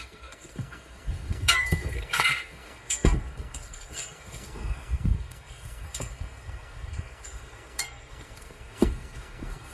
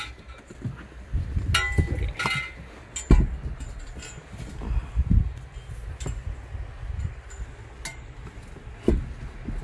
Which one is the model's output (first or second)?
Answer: first